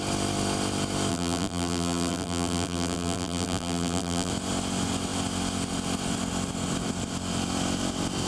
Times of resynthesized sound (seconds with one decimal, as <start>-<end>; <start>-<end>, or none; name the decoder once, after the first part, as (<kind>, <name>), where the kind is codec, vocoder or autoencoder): 1.1-4.3 (vocoder, BigVGAN v2)